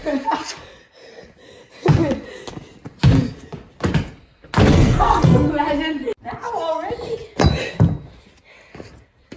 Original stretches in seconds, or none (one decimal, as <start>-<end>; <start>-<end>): 0.0-4.7; 5.5-9.4